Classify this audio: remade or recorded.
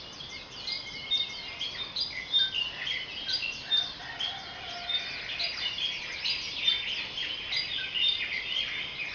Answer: recorded